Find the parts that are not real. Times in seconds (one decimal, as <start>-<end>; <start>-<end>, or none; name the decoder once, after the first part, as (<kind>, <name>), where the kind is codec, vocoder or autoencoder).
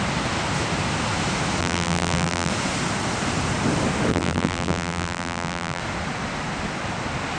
1.6-2.5 (vocoder, BigVGAN v2); 4.1-5.8